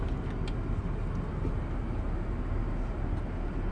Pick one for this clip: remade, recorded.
recorded